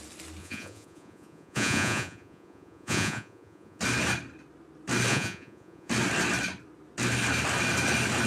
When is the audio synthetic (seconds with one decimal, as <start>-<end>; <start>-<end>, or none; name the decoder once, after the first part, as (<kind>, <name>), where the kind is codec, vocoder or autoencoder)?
0.4-3.8 (vocoder, Vocos); 5.1-5.9